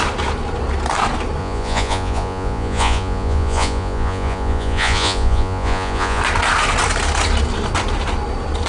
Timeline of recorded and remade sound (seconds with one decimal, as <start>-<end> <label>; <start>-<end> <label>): 0.0-1.4 recorded; 1.4-6.2 remade; 6.2-8.7 recorded